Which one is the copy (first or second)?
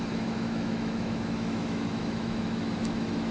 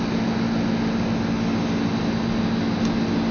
first